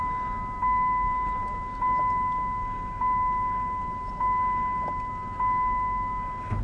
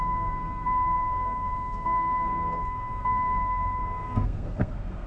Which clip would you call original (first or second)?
first